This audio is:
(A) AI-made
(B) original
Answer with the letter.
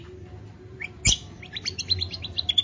B